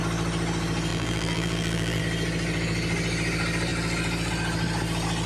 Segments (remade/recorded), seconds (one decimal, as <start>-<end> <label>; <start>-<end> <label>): 0.0-0.9 recorded; 0.9-2.0 remade; 2.0-5.3 recorded